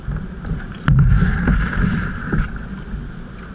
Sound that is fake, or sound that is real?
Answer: real